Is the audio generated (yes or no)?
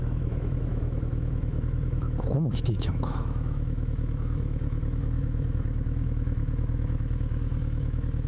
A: yes